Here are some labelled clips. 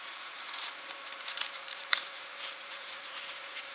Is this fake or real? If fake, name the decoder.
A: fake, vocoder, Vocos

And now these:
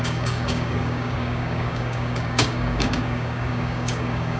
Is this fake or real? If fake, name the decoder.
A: fake, codec, DAC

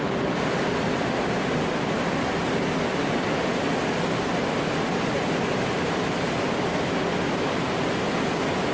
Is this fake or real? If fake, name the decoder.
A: real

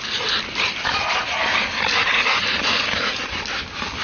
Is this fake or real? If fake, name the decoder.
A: real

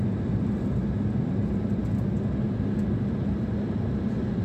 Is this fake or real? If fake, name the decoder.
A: real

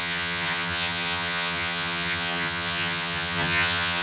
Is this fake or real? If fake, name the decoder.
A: fake, vocoder, HiFi-GAN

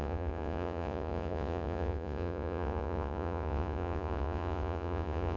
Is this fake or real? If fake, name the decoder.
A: fake, vocoder, Vocos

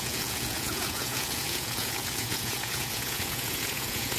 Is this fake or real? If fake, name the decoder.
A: fake, vocoder, Vocos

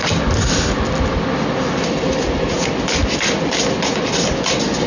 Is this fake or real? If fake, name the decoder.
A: real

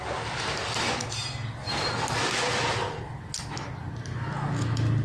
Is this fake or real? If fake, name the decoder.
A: real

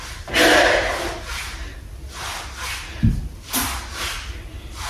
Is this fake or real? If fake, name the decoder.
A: real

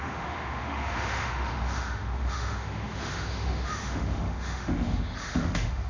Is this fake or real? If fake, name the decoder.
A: fake, autoencoder, DAC-VAE